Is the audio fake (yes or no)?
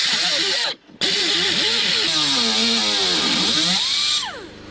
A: no